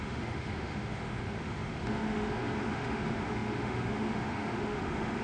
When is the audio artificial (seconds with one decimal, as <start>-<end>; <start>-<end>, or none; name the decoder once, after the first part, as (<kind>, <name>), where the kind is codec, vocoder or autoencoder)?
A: 0.0-5.2 (autoencoder, DAC-VAE)